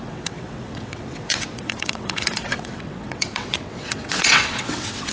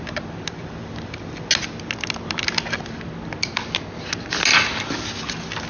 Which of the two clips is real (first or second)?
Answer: second